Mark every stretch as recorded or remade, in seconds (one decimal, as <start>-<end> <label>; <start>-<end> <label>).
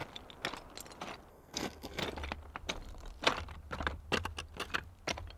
0.0-1.3 recorded; 1.3-2.0 remade; 2.0-5.4 recorded